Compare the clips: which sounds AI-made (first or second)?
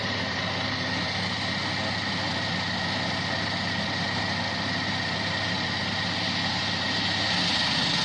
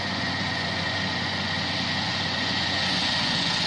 second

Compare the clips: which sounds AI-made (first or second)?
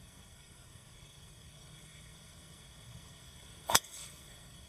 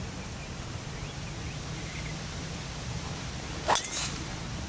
first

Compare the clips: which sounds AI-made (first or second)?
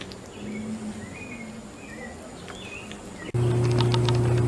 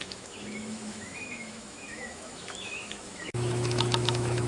second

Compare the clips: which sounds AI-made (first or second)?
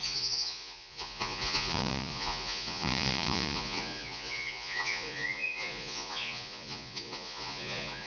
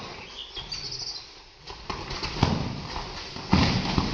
first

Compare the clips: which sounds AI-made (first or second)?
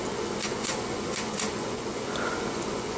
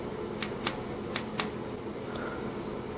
first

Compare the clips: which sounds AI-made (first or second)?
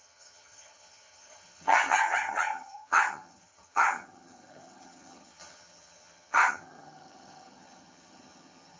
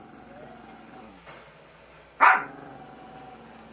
first